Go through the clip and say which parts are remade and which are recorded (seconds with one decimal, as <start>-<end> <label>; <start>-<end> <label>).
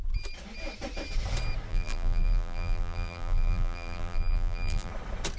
0.0-1.7 recorded; 1.7-4.9 remade; 4.9-5.4 recorded